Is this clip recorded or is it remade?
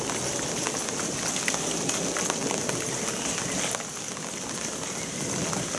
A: recorded